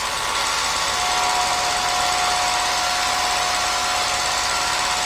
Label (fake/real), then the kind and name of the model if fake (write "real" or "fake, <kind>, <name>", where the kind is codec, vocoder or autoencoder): real